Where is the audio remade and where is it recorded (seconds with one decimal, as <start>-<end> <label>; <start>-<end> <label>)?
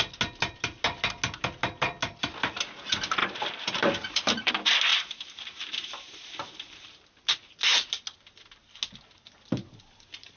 0.0-3.2 recorded; 3.2-4.5 remade; 4.5-4.9 recorded; 4.9-7.1 remade; 7.1-10.4 recorded